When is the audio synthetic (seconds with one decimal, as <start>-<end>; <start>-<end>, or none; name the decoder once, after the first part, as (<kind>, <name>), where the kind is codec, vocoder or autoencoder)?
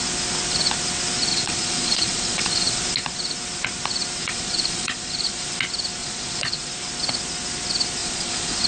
1.3-2.8 (vocoder, Vocos); 4.2-5.4; 6.0-6.7; 8.0-8.7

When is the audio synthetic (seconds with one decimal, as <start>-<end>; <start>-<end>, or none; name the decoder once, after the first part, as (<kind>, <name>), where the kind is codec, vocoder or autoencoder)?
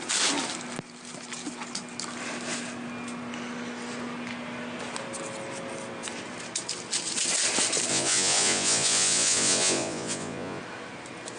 7.9-10.6 (vocoder, Vocos)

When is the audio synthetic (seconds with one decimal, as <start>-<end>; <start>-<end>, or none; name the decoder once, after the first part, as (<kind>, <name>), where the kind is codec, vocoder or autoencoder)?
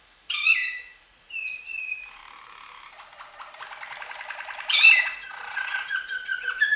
0.0-2.2 (vocoder, Vocos); 5.0-6.8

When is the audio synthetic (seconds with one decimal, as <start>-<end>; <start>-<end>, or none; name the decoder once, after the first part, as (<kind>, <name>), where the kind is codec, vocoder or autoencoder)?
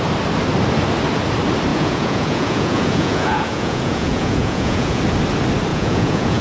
1.7-5.0 (vocoder, Vocos); 5.7-6.4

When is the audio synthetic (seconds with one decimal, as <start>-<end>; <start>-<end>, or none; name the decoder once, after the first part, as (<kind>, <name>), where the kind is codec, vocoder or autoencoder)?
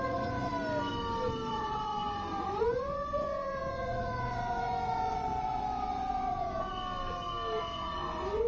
0.0-0.5 (vocoder, Vocos); 1.5-6.7; 7.6-8.5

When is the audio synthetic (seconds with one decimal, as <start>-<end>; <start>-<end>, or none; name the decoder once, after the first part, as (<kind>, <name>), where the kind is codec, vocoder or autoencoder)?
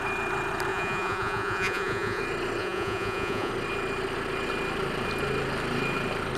0.7-2.2 (vocoder, Vocos); 2.6-3.5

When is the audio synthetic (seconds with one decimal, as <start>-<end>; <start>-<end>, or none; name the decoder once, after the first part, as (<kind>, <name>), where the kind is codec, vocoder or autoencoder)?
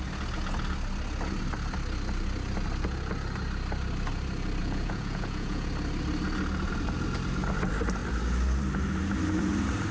4.6-5.7 (vocoder, Vocos)